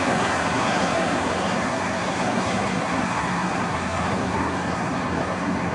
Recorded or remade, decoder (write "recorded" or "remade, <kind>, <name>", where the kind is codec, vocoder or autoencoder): remade, codec, SNAC